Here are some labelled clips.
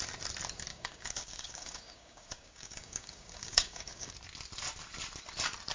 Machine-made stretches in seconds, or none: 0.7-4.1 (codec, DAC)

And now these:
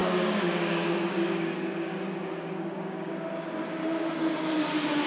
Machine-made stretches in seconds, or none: 0.0-3.1 (codec, DAC); 3.8-4.3

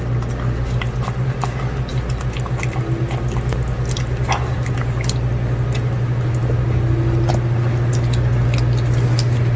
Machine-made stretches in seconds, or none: none

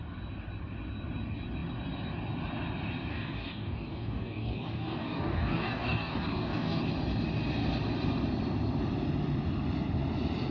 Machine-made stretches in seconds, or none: 3.1-6.8 (codec, DAC)